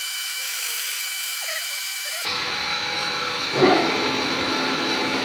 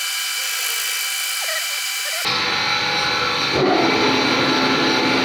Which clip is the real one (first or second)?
second